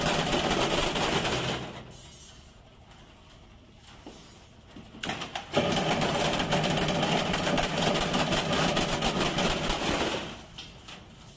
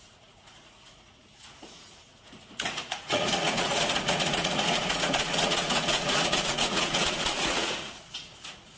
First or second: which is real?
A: first